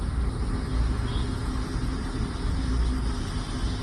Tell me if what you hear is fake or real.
real